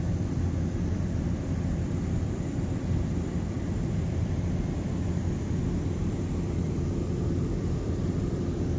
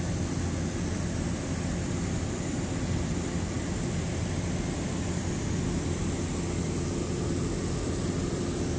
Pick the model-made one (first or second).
first